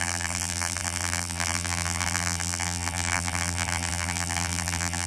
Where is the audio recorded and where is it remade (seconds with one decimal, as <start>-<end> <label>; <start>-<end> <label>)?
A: 0.0-5.1 remade